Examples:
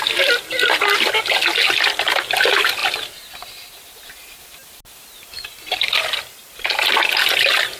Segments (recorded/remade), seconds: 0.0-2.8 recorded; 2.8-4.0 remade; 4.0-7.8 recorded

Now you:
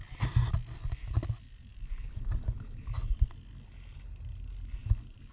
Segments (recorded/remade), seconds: 0.0-5.3 recorded

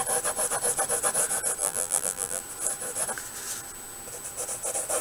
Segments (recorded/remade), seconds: 0.0-1.6 recorded; 1.6-2.4 remade; 2.4-5.0 recorded

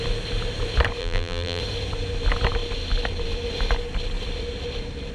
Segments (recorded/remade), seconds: 0.0-1.0 recorded; 1.0-1.6 remade; 1.6-5.1 recorded

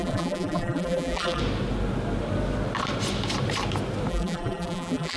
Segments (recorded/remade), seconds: 0.0-1.4 remade; 1.4-4.1 recorded; 4.1-5.2 remade

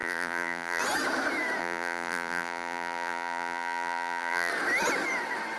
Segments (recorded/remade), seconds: 0.0-0.8 remade; 0.8-1.6 recorded; 1.6-4.5 remade; 4.5-5.6 recorded